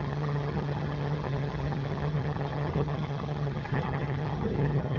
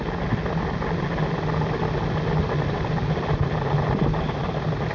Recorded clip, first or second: second